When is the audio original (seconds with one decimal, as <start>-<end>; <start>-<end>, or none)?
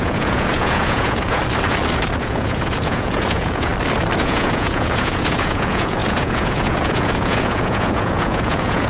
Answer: 1.4-2.2; 3.7-4.2